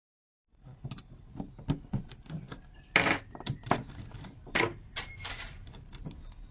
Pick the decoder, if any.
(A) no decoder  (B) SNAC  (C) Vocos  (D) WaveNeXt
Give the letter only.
A